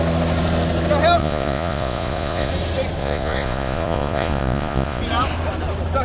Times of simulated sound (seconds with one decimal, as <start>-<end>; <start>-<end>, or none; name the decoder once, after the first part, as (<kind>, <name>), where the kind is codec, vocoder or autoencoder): 1.2-2.5 (vocoder, Vocos); 3.0-5.0